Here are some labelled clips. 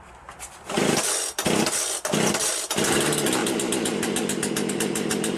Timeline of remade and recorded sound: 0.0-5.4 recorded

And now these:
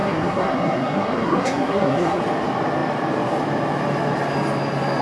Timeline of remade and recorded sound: 0.0-2.2 remade; 2.2-5.0 recorded

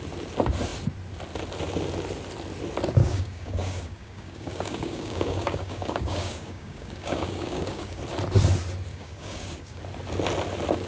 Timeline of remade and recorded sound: 0.0-3.0 recorded; 3.0-8.0 remade; 8.0-8.9 recorded; 8.9-9.8 remade; 9.8-10.9 recorded